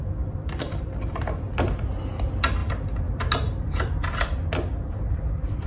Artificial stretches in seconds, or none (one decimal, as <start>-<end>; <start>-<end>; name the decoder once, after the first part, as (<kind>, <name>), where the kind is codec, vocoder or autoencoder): 0.4-1.2 (vocoder, BigVGAN v2); 2.6-4.0

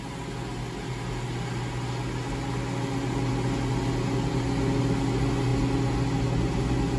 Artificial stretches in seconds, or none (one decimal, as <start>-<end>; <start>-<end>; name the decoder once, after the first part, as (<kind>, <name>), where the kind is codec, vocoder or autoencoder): none

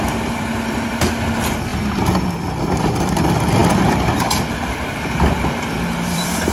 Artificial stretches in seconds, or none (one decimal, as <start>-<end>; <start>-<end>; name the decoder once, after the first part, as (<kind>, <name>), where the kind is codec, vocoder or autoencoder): 0.0-1.7 (vocoder, BigVGAN v2); 2.8-6.5

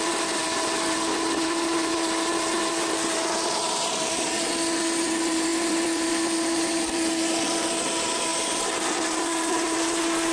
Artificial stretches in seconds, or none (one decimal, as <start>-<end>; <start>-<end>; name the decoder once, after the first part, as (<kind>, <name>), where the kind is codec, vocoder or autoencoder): 0.0-1.9 (vocoder, BigVGAN v2); 2.6-10.3